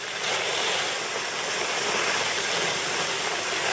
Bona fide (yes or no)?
yes